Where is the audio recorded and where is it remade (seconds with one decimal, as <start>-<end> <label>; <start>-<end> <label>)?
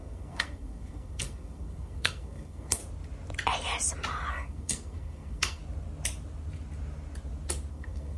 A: 0.0-2.8 remade; 2.8-4.3 recorded; 4.3-5.6 remade; 5.6-7.7 recorded; 7.7-8.2 remade